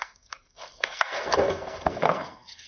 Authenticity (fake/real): fake